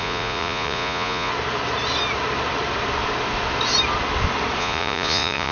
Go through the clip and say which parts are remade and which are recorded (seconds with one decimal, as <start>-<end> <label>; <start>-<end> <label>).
0.0-1.3 remade; 1.3-4.6 recorded; 4.6-5.5 remade

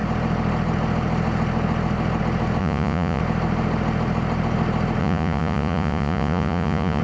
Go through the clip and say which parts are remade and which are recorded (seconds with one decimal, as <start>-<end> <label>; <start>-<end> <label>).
0.0-2.6 recorded; 2.6-3.2 remade; 3.2-5.0 recorded; 5.0-7.0 remade

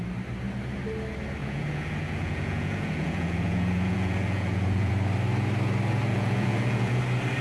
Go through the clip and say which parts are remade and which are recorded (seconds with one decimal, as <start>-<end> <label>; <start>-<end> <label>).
0.0-1.4 recorded; 1.4-4.9 remade; 4.9-6.1 recorded; 6.1-7.0 remade; 7.0-7.4 recorded

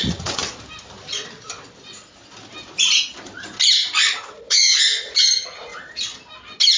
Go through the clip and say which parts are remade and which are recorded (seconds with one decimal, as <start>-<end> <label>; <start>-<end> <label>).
0.0-0.4 remade; 0.4-4.5 recorded; 4.5-5.7 remade; 5.7-6.8 recorded